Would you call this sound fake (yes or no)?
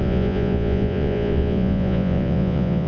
yes